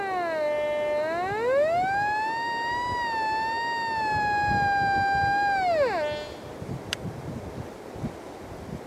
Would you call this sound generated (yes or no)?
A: no